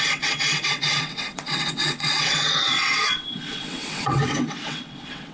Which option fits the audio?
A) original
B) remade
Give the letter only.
B